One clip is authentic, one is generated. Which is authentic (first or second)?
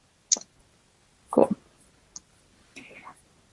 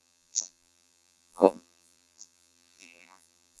first